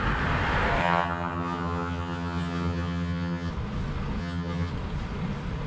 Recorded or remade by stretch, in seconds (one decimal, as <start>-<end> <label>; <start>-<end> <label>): 0.0-0.8 recorded; 0.8-3.5 remade; 3.5-4.2 recorded; 4.2-4.7 remade; 4.7-5.7 recorded